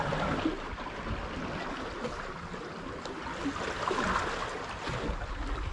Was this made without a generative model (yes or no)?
yes